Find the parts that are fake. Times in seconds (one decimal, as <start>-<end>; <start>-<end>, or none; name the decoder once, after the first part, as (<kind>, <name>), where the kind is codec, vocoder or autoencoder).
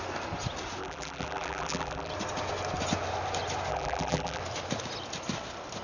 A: 0.8-2.1 (vocoder, BigVGAN v2); 3.7-4.4